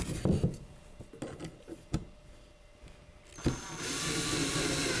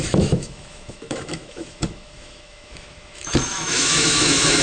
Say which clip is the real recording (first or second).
first